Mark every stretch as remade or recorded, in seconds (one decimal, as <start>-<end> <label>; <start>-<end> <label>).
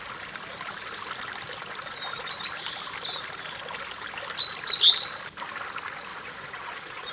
0.0-6.1 recorded; 6.1-7.1 remade